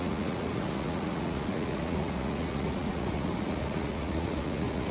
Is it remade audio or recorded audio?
remade